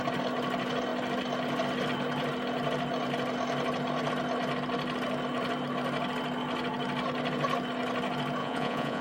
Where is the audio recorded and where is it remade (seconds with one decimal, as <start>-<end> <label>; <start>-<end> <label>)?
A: 0.0-8.4 recorded; 8.4-9.0 remade